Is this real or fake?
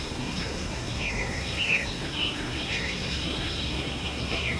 fake